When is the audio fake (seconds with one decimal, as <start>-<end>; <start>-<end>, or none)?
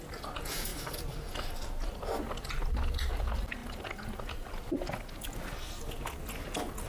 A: 0.0-6.9